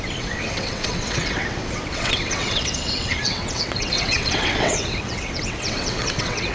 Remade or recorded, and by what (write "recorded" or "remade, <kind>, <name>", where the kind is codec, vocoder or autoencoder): remade, vocoder, WaveNeXt